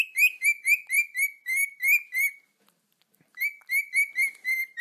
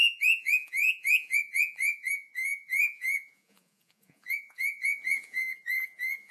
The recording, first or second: first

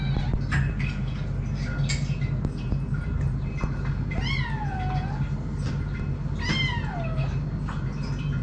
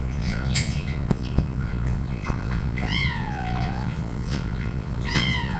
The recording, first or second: first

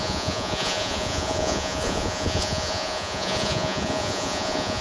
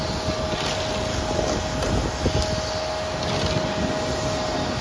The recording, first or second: second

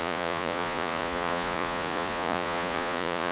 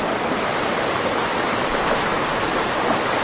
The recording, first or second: second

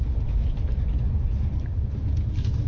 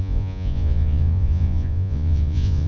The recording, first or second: first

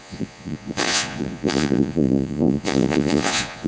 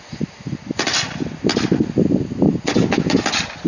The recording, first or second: second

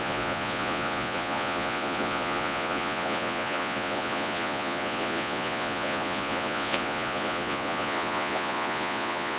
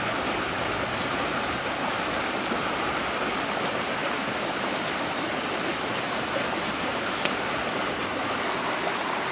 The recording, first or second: second